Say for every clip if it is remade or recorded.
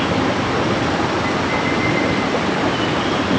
recorded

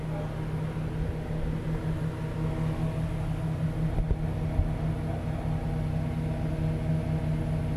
recorded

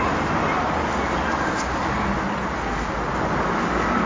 recorded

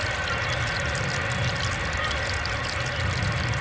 recorded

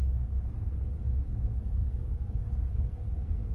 remade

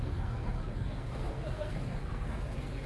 remade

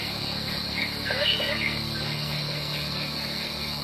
remade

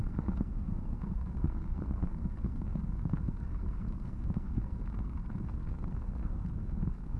remade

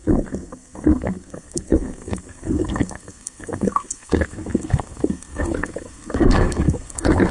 remade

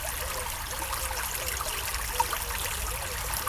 recorded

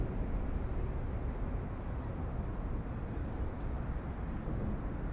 recorded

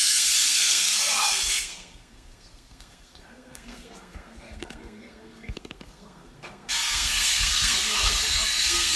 remade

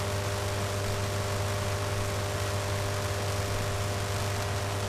recorded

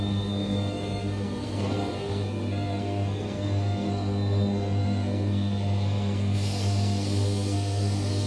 remade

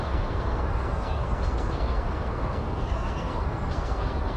remade